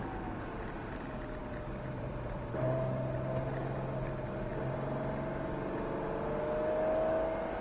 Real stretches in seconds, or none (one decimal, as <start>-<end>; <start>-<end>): 0.0-7.6